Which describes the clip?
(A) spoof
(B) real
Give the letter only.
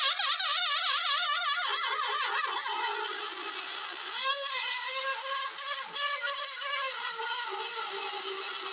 B